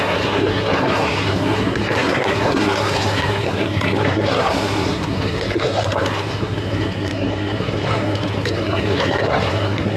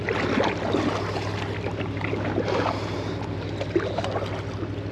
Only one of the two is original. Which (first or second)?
second